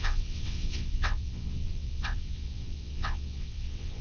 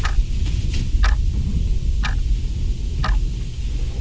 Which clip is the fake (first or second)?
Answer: first